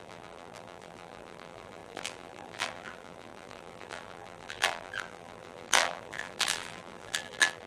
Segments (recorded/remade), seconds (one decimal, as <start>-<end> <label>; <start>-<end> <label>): 0.0-7.7 remade